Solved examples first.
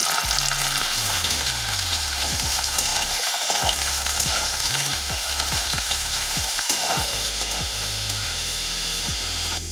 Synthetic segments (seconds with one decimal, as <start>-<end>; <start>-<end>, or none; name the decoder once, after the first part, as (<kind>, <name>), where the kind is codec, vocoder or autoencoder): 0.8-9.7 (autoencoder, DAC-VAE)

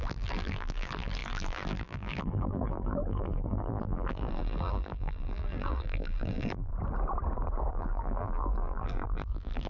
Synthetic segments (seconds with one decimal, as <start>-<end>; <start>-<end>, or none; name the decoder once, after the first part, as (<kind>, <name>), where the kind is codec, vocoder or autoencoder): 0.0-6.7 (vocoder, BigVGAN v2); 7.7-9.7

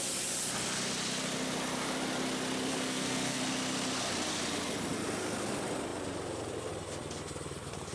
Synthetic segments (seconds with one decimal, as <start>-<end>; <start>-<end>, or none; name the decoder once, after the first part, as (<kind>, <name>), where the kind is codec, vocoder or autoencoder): 2.7-3.4 (codec, SNAC)